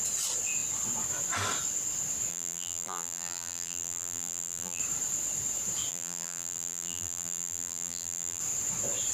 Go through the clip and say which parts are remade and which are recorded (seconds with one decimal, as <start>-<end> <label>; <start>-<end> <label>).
0.0-2.3 recorded; 2.3-4.8 remade; 4.8-5.9 recorded; 5.9-8.4 remade; 8.4-9.1 recorded

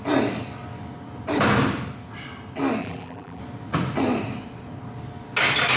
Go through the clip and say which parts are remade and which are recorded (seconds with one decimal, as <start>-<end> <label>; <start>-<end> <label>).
0.0-2.8 recorded; 2.8-3.4 remade; 3.4-5.8 recorded